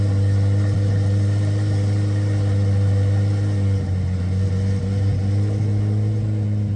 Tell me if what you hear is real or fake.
real